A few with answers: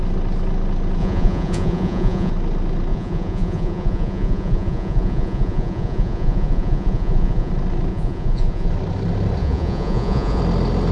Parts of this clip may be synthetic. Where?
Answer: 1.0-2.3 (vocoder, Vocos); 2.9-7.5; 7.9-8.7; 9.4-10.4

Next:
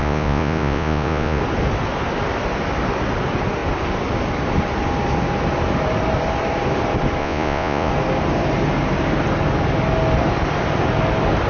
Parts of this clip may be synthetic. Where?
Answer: 0.0-1.4 (vocoder, Vocos); 7.2-7.9

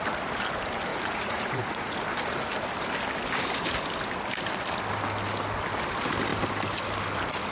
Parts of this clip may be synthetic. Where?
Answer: 0.9-2.0 (vocoder, Vocos)

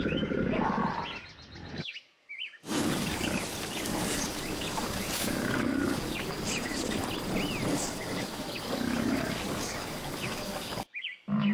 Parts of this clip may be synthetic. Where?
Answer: 0.0-0.8 (codec, DAC); 1.7-7.0; 7.7-11.5

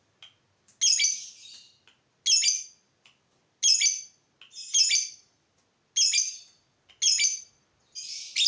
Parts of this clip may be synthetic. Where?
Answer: 1.1-1.8 (vocoder, BigVGAN v2)